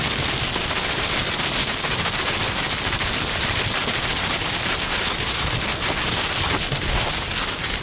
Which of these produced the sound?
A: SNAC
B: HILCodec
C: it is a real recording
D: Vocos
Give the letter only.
C